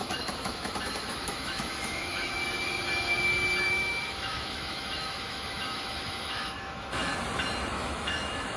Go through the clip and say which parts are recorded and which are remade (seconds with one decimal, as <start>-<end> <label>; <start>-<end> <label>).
0.0-2.4 remade; 2.4-3.6 recorded; 3.6-7.1 remade; 7.1-7.7 recorded; 7.7-8.6 remade